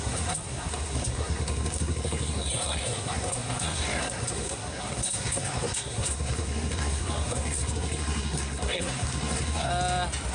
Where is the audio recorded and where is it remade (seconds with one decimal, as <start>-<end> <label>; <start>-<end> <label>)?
0.0-9.7 remade; 9.7-10.3 recorded